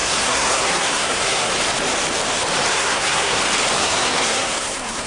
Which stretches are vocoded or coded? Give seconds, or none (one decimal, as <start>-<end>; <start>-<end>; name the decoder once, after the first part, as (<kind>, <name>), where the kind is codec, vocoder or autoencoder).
0.0-1.5 (codec, SNAC); 2.7-3.4; 3.8-5.1